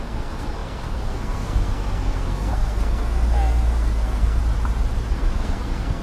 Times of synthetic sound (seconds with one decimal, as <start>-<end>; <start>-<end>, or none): 0.0-4.4; 5.1-6.0